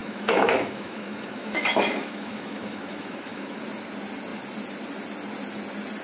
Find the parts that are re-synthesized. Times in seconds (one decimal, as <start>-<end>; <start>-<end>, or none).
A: 0.0-3.6